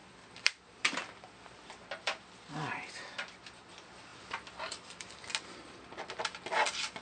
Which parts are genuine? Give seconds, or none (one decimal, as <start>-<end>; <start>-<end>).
1.9-7.0